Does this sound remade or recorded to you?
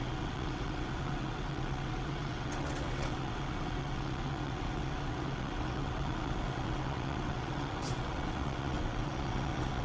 remade